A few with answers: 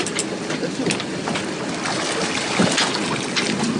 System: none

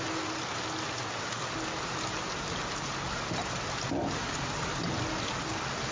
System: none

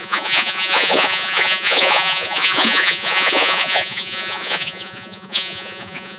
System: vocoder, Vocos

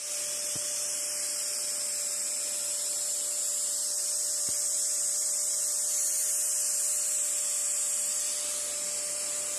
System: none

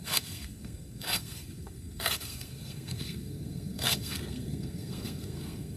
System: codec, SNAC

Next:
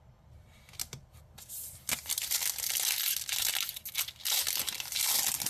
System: none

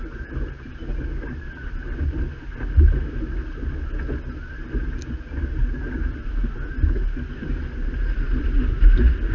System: none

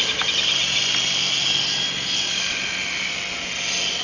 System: none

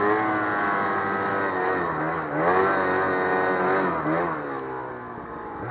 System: none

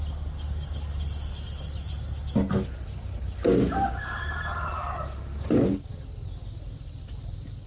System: none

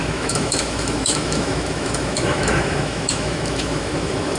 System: autoencoder, DAC-VAE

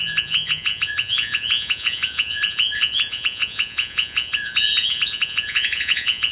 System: vocoder, Vocos